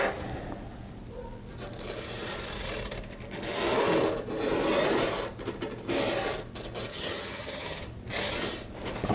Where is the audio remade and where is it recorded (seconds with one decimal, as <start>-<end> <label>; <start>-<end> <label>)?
0.0-6.9 recorded; 6.9-7.8 remade; 7.8-9.1 recorded